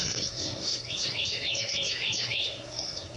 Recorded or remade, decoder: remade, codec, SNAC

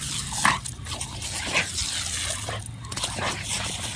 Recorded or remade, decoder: recorded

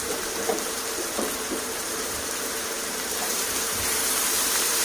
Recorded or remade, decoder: remade, vocoder, BigVGAN v2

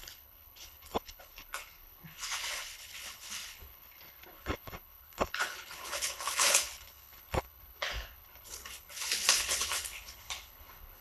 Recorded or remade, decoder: remade, codec, HILCodec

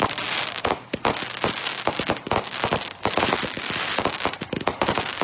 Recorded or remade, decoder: recorded